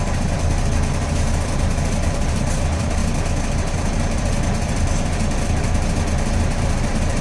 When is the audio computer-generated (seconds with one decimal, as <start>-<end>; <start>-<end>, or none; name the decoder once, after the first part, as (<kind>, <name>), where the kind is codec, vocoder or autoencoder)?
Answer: 0.0-3.0 (vocoder, BigVGAN v2); 3.6-7.2